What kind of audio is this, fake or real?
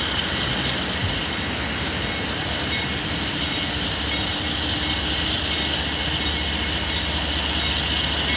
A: real